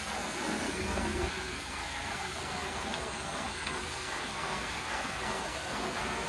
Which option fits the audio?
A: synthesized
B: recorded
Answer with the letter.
A